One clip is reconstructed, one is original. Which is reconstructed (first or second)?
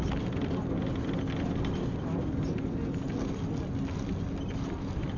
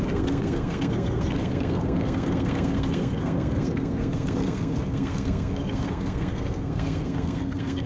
second